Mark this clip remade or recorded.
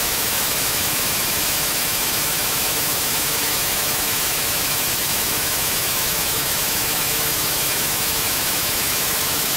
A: remade